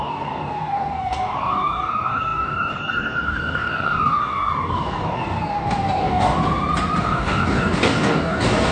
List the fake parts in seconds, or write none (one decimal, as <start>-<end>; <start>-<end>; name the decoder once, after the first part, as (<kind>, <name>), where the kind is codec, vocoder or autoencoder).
0.0-6.4 (codec, DAC); 7.0-8.7